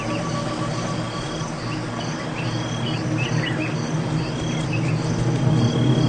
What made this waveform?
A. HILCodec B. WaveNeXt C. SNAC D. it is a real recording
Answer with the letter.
D